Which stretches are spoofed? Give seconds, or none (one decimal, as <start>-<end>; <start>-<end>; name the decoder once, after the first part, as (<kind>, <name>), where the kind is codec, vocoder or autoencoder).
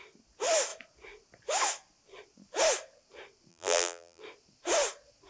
3.5-4.2 (vocoder, BigVGAN v2)